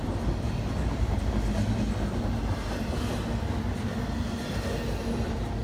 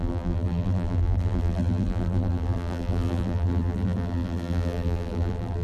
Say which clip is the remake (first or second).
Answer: second